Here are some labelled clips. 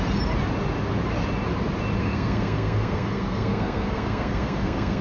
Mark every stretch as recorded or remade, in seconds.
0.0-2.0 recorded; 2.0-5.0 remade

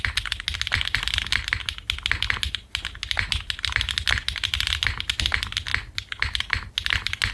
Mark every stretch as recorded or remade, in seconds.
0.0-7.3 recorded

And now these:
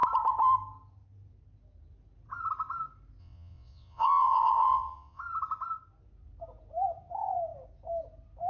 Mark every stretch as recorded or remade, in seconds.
0.0-3.2 recorded; 3.2-5.2 remade; 5.2-8.5 recorded